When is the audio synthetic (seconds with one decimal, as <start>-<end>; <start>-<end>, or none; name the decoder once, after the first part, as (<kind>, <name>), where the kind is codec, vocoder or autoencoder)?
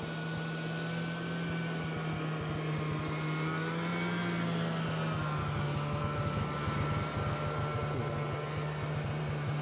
none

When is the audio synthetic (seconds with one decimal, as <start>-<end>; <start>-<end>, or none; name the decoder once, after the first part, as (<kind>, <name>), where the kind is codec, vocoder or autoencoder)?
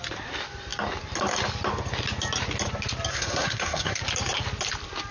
3.1-4.0 (codec, SNAC)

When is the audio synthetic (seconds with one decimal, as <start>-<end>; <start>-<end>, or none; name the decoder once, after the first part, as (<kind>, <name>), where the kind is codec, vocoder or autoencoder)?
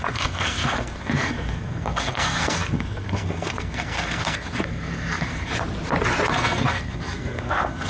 0.0-5.5 (codec, SNAC); 6.3-7.9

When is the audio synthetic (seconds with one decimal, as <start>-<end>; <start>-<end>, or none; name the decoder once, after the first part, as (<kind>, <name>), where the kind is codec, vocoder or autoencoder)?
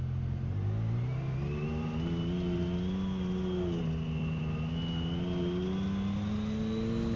none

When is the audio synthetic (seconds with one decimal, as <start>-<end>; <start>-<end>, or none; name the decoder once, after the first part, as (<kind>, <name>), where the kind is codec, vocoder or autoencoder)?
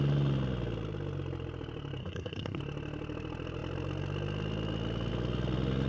2.0-2.6 (codec, SNAC)